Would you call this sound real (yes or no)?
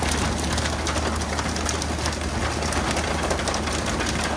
yes